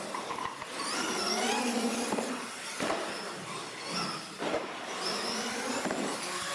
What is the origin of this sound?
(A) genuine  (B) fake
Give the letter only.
A